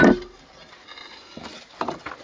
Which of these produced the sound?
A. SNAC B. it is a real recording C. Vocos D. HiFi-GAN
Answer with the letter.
B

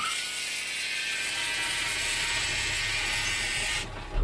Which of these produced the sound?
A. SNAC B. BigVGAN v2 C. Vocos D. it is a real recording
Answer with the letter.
D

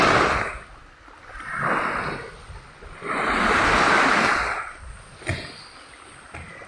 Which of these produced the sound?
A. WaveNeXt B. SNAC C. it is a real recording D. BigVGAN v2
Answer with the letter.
C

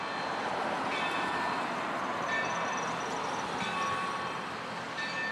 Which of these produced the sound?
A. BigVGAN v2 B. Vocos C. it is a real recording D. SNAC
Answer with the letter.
C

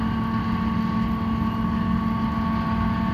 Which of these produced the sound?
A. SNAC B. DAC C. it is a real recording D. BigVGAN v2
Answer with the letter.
C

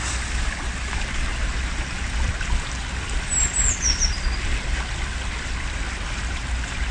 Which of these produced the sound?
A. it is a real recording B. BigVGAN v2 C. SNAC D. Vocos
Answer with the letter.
A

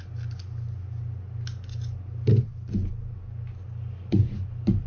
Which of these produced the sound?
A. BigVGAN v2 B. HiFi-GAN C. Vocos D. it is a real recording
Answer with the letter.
D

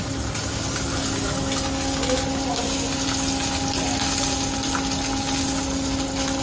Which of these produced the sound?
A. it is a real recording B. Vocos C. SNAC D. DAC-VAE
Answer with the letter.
A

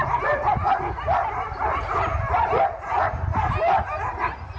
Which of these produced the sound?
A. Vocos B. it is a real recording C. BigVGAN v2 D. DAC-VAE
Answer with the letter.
B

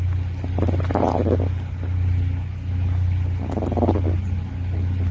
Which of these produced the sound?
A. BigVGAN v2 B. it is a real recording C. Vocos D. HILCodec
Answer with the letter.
B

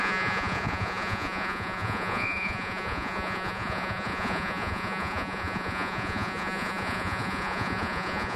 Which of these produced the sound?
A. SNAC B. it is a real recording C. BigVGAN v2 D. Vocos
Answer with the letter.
D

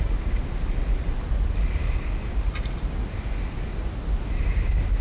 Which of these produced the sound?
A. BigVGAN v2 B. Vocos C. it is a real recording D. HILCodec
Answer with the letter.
C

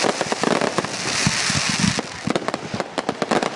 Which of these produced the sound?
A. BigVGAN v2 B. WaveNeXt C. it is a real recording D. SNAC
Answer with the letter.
C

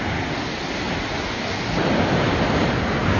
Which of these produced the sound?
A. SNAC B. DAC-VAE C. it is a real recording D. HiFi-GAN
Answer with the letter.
C